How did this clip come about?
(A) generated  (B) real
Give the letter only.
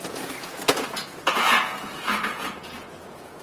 A